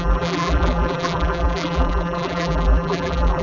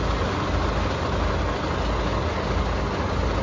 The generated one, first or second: first